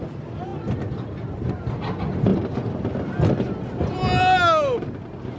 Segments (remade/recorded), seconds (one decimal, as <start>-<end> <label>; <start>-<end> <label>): 0.0-0.5 recorded; 0.5-1.5 remade; 1.5-5.4 recorded